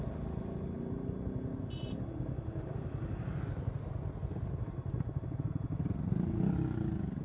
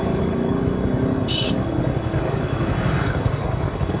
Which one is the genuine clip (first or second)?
first